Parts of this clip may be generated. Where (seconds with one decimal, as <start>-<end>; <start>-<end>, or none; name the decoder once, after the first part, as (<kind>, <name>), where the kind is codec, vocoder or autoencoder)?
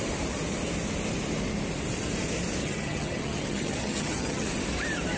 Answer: 2.6-4.5 (vocoder, HiFi-GAN)